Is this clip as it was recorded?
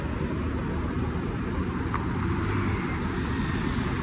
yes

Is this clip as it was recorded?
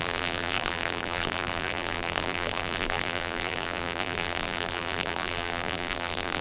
no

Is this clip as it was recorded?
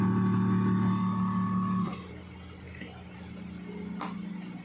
yes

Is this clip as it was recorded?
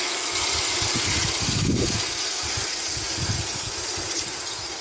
yes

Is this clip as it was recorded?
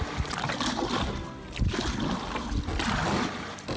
yes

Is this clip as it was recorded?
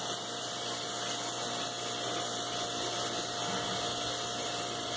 yes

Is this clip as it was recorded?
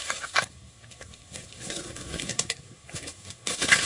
no